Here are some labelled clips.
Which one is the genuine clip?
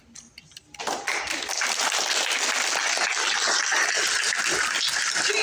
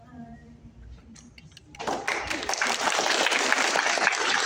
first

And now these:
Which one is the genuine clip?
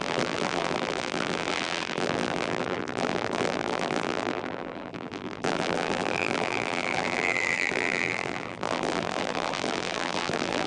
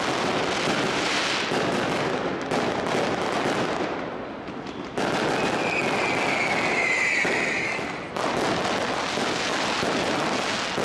second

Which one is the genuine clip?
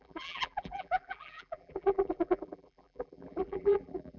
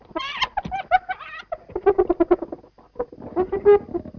second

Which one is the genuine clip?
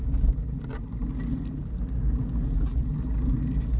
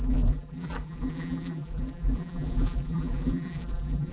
first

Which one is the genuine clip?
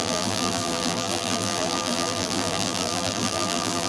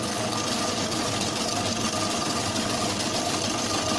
second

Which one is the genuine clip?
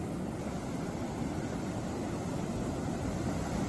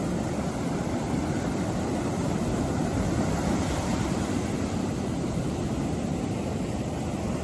first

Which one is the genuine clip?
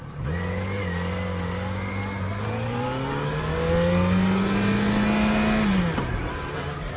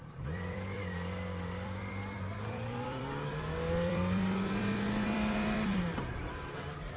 first